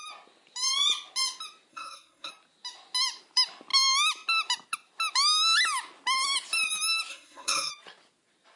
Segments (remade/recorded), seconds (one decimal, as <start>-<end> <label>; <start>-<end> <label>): 0.0-1.7 recorded; 1.7-2.3 remade; 2.3-7.1 recorded; 7.1-7.7 remade; 7.7-8.6 recorded